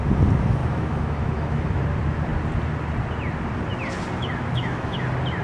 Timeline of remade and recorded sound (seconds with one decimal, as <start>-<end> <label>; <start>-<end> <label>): 0.0-0.6 recorded; 0.6-1.8 remade; 1.8-4.2 recorded; 4.2-5.0 remade; 5.0-5.4 recorded